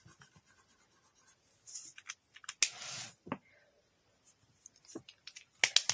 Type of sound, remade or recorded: recorded